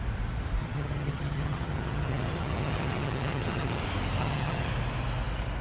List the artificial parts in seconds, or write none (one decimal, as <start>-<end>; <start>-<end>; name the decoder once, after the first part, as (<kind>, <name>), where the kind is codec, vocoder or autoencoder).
0.6-3.8 (vocoder, HiFi-GAN); 4.2-4.7

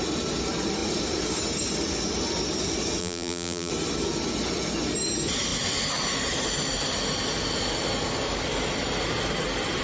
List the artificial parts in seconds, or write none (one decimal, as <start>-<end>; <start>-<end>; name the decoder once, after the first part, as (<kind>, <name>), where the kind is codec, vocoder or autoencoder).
3.0-3.7 (vocoder, BigVGAN v2)

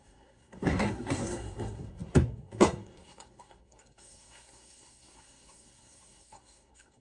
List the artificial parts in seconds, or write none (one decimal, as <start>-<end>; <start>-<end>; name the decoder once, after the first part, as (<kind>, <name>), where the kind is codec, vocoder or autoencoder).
0.0-7.0 (codec, SNAC)